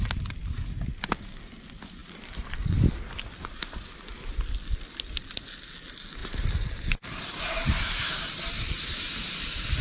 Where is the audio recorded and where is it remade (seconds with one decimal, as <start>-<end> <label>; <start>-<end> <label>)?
0.0-2.0 recorded; 2.0-2.9 remade; 2.9-6.2 recorded; 6.2-8.8 remade; 8.8-9.8 recorded